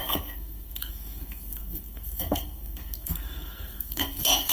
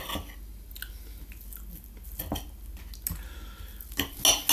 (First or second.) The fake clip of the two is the first